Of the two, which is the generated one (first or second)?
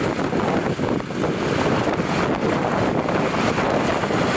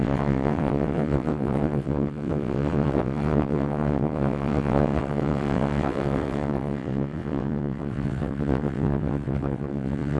second